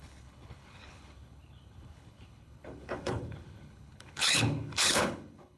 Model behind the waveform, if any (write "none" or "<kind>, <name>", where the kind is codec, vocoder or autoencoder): codec, HILCodec